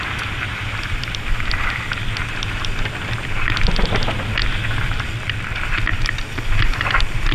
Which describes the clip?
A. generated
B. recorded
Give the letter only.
B